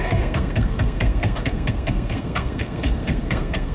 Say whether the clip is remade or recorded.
remade